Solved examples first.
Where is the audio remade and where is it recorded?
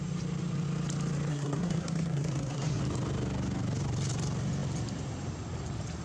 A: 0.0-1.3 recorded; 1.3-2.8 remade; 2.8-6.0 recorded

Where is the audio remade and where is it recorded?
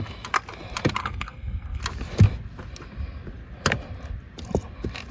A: 0.0-1.0 recorded; 1.0-1.8 remade; 1.8-5.1 recorded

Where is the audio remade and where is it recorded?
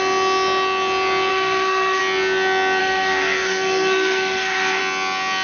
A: 0.0-1.3 recorded; 1.3-2.0 remade; 2.0-2.8 recorded; 2.8-4.8 remade; 4.8-5.4 recorded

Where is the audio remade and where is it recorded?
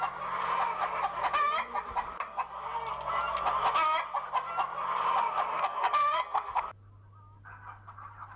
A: 0.0-5.5 recorded; 5.5-6.6 remade; 6.6-8.4 recorded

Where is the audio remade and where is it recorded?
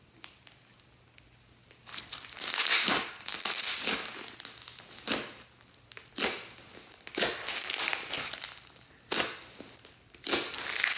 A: 0.0-11.0 recorded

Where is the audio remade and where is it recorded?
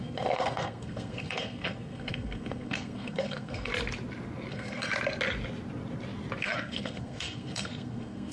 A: 0.0-3.7 remade; 3.7-4.5 recorded; 4.5-4.9 remade; 4.9-6.4 recorded; 6.4-8.3 remade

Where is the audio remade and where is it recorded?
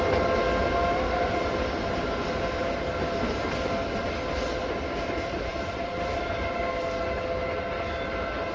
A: 0.0-8.5 recorded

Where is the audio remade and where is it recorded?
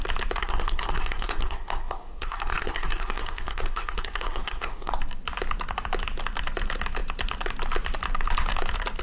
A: 0.0-0.4 recorded; 0.4-4.9 remade; 4.9-9.0 recorded